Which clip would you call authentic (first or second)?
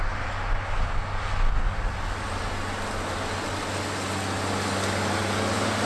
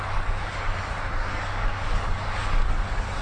first